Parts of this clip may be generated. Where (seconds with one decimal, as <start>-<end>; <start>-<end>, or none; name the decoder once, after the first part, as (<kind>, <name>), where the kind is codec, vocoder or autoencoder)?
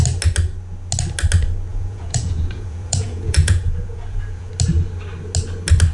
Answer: 1.7-4.5 (vocoder, Vocos)